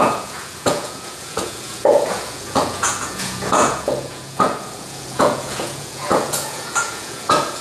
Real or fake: fake